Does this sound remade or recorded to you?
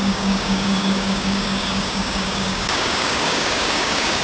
remade